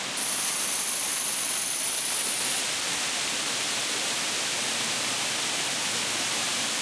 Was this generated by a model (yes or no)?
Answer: no